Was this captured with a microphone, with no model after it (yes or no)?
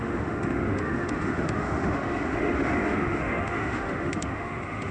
no